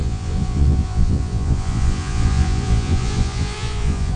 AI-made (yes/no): yes